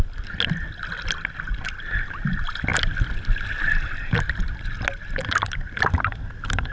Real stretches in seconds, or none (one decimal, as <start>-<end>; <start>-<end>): 0.0-6.7